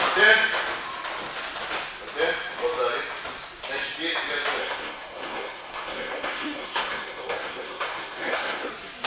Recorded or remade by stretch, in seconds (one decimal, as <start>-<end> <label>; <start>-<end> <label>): 0.0-4.6 recorded; 4.6-8.7 remade; 8.7-9.1 recorded